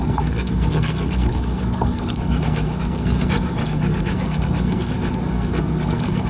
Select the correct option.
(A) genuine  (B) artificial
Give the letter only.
B